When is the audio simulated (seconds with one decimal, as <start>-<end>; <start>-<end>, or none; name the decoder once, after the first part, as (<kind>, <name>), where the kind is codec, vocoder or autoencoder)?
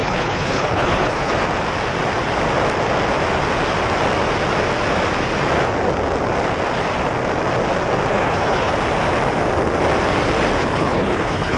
0.0-1.3 (codec, HILCodec); 8.1-8.7; 10.6-11.6